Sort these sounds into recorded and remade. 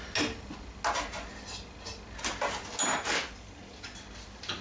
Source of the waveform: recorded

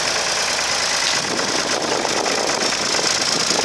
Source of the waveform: recorded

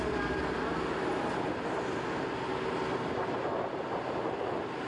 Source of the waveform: recorded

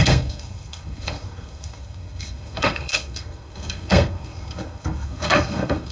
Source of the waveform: remade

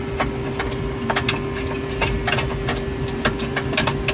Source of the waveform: recorded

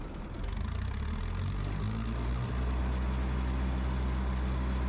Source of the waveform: recorded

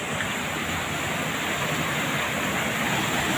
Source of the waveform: recorded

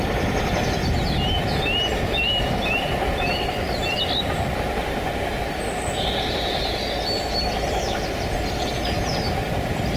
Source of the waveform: recorded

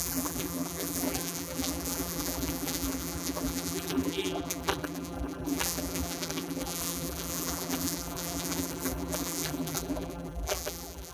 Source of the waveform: remade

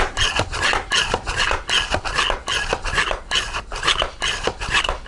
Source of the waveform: recorded